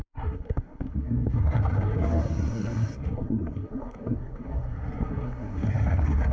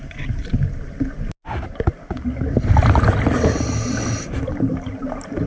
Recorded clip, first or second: second